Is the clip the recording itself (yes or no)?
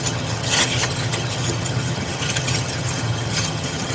no